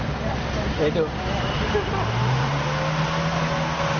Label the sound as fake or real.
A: real